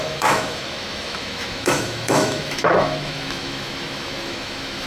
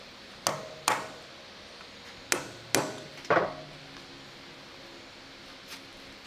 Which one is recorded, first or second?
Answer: second